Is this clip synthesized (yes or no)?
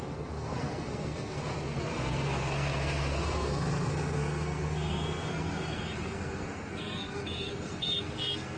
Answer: yes